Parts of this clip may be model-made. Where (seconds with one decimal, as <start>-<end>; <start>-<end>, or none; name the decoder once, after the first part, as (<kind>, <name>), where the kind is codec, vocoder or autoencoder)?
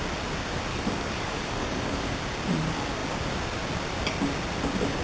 0.7-2.1 (codec, DAC)